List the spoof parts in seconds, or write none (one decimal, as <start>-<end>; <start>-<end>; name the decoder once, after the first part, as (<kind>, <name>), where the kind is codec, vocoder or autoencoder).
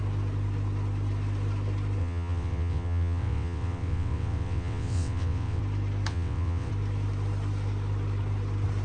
2.0-5.6 (vocoder, WaveNeXt); 6.1-6.7